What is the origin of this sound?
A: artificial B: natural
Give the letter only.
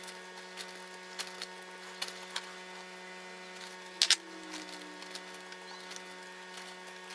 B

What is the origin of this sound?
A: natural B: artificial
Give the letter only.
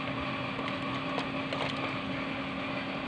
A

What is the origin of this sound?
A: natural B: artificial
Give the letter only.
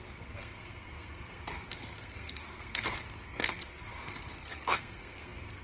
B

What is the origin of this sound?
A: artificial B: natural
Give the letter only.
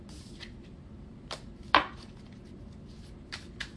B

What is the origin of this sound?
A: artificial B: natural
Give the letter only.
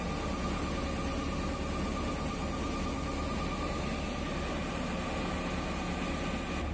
B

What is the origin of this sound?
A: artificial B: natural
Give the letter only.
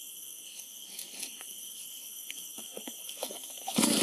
A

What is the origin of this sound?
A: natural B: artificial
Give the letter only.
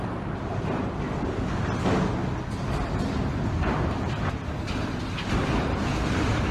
A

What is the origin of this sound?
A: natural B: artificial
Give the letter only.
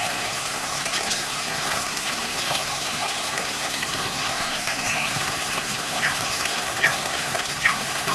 B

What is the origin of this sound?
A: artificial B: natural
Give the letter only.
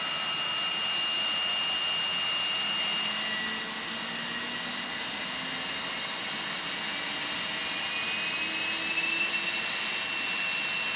B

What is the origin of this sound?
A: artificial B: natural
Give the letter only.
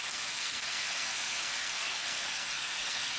A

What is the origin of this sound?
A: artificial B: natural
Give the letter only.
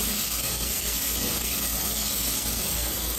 A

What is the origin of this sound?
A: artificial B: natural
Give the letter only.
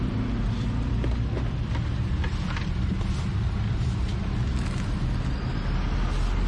B